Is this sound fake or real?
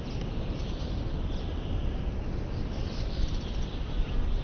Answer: real